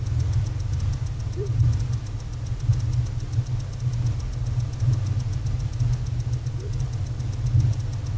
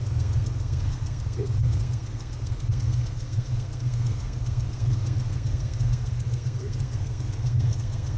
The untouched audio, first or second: first